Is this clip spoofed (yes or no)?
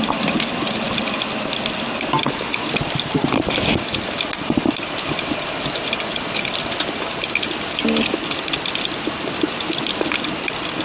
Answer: no